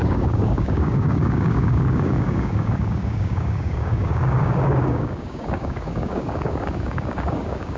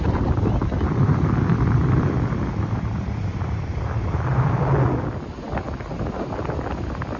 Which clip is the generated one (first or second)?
first